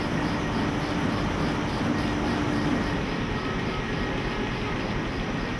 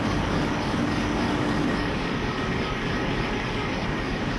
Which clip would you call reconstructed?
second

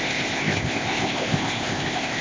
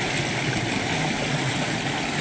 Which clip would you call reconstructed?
first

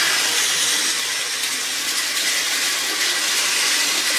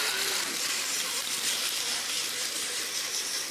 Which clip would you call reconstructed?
second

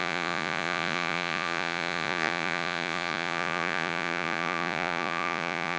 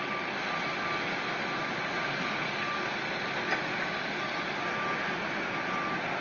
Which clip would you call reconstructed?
first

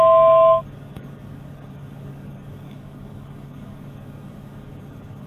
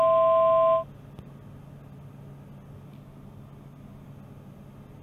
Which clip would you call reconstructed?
first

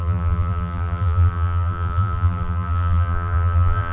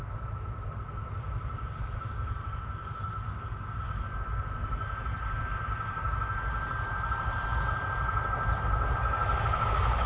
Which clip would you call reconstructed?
first